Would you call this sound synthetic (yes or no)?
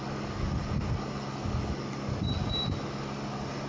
no